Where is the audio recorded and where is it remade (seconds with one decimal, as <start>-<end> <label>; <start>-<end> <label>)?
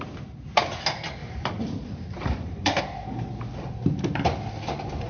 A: 0.0-1.2 recorded; 1.2-2.8 remade; 2.8-5.1 recorded